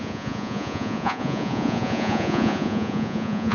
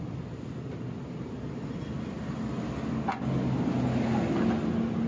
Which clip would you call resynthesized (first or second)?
first